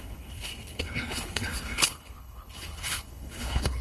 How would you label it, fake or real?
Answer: fake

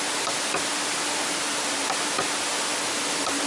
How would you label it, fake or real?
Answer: real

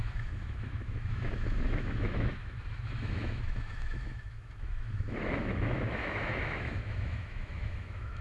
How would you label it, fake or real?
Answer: fake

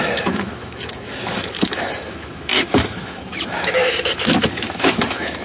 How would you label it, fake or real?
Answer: fake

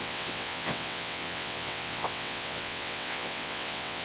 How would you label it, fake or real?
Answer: fake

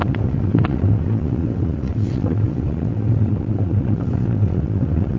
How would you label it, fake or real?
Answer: fake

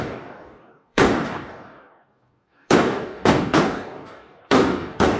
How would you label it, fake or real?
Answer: fake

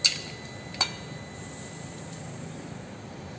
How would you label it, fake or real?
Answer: real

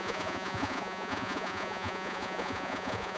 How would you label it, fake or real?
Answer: fake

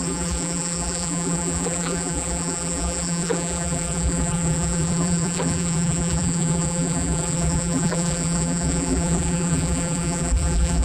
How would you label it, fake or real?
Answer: fake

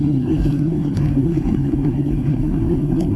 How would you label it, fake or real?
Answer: fake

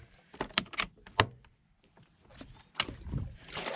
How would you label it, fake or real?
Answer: real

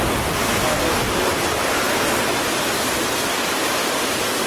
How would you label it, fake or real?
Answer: real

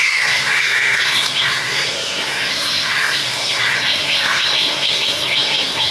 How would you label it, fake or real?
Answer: fake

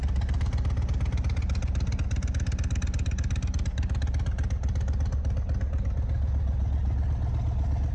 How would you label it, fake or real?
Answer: real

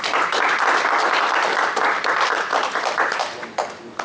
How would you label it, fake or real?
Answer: real